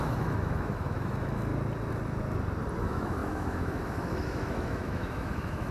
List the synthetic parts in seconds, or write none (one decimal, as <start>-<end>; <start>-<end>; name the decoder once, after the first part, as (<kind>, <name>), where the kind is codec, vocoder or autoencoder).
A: 0.0-1.5 (autoencoder, DAC-VAE); 2.8-5.7